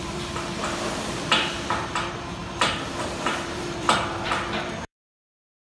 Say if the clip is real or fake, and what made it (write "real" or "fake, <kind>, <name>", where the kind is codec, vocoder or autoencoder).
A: fake, vocoder, BigVGAN v2